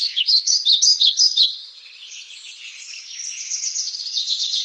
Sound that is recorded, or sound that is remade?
remade